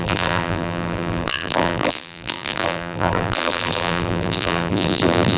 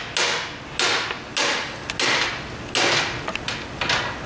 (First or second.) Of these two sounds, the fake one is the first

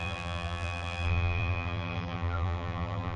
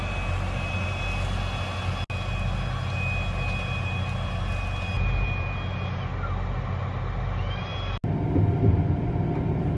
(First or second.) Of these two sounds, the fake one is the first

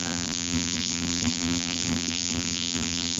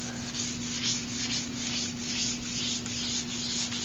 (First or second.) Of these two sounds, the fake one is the first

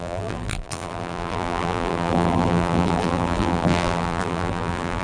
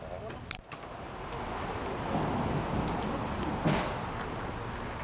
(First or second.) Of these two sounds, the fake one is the first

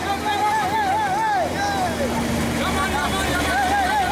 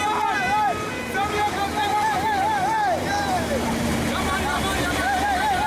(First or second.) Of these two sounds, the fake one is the second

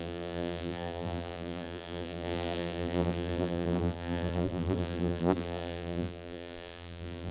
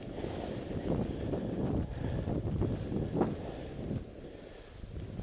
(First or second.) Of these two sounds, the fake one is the first